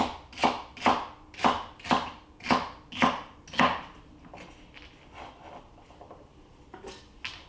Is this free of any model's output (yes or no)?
yes